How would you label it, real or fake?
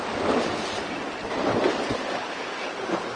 real